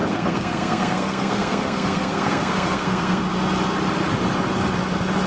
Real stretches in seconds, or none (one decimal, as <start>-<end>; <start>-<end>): 3.2-5.3